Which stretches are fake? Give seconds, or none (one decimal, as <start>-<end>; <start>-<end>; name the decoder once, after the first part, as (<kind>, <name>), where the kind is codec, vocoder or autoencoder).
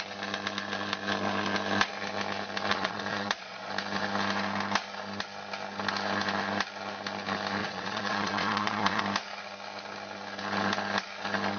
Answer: 2.7-3.7 (vocoder, Vocos); 7.6-9.0